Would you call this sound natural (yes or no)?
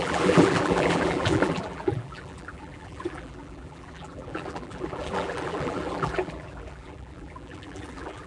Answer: no